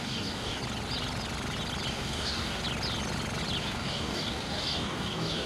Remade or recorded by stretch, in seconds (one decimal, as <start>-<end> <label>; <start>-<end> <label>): 0.0-0.6 remade; 0.6-1.9 recorded; 1.9-2.6 remade; 2.6-3.6 recorded; 3.6-5.5 remade